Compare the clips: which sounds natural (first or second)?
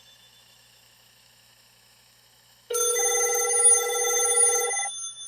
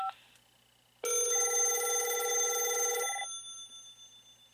second